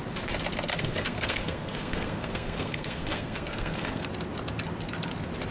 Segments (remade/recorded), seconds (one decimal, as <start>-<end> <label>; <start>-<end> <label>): 0.0-0.7 recorded; 0.7-4.0 remade; 4.0-5.5 recorded